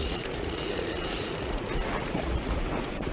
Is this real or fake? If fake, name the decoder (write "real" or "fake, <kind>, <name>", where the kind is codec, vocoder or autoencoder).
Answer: fake, vocoder, Vocos